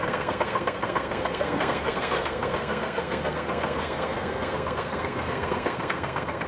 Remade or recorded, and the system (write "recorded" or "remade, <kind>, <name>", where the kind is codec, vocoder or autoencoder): remade, codec, SNAC